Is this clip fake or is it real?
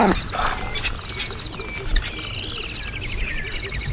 real